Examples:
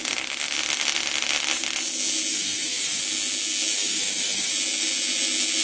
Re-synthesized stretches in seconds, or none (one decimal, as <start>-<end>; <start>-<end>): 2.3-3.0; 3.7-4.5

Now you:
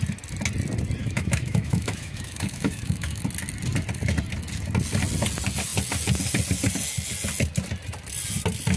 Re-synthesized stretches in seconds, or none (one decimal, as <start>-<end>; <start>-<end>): 1.0-3.2

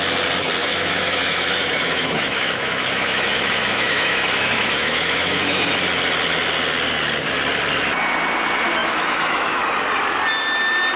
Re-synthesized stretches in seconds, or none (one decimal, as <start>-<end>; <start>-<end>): 0.6-5.7; 8.8-9.6

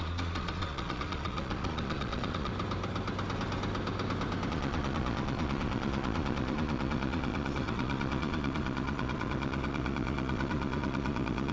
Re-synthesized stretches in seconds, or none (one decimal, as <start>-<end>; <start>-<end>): 0.0-2.5; 4.5-11.5

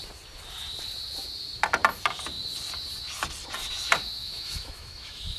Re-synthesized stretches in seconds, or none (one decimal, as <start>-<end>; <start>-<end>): 4.2-5.4

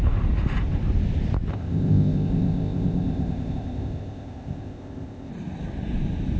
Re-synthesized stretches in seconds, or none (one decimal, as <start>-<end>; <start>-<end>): 1.5-5.3

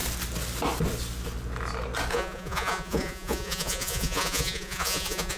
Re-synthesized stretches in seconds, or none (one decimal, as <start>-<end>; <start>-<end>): 2.1-5.4

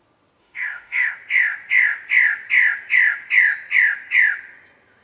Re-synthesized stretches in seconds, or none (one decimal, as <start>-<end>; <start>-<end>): 0.4-1.1